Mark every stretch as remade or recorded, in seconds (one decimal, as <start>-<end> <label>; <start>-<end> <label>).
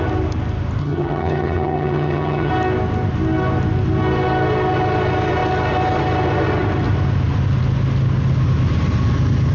0.0-0.8 recorded; 0.8-2.5 remade; 2.5-9.5 recorded